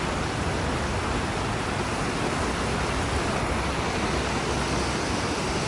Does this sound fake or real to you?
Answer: real